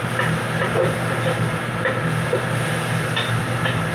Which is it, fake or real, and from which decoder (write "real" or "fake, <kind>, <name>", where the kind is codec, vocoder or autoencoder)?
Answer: real